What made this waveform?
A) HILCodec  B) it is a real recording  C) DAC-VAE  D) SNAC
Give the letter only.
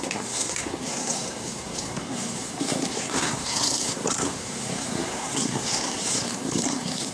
D